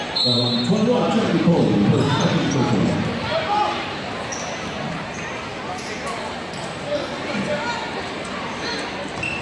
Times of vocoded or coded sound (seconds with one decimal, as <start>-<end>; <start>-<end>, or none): 0.0-4.3; 4.9-9.4